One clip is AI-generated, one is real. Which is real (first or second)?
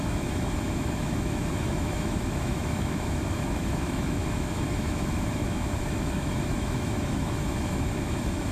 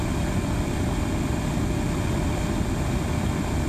second